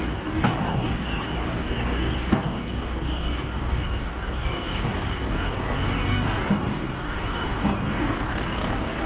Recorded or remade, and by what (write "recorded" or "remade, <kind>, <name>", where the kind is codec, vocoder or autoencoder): remade, codec, DAC